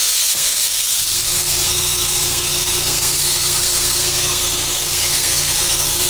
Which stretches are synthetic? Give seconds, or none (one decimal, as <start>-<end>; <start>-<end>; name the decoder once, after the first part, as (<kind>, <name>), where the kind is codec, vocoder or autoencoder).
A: 0.0-6.1 (codec, SNAC)